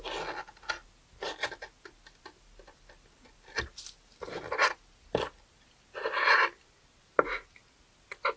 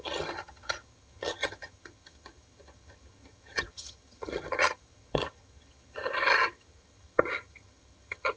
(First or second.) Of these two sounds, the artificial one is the second